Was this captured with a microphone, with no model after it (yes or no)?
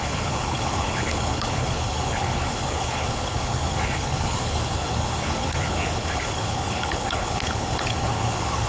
no